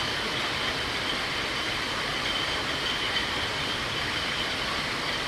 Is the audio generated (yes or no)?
no